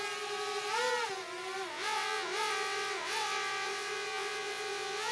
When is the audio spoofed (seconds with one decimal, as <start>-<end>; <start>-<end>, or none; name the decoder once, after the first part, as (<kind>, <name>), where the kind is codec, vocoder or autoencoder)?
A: 1.7-5.1 (vocoder, WaveNeXt)